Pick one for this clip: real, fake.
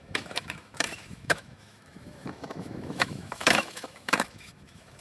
fake